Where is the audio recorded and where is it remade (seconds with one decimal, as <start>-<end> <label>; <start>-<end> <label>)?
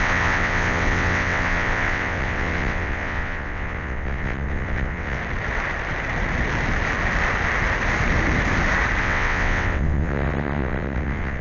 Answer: 0.0-5.2 remade; 5.2-9.0 recorded; 9.0-11.4 remade